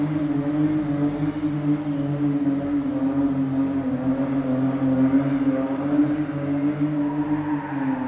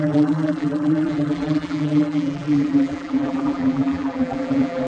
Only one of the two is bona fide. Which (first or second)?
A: first